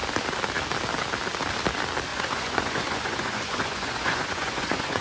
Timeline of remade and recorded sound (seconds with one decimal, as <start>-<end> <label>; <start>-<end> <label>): 0.0-2.1 recorded; 2.1-5.0 remade